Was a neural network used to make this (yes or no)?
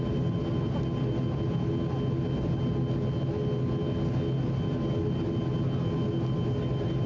no